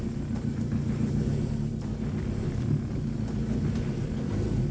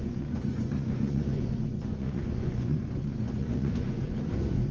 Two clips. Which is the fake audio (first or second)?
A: second